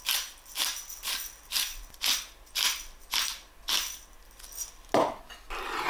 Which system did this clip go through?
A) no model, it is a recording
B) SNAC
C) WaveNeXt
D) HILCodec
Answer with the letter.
A